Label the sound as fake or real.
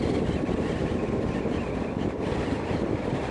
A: real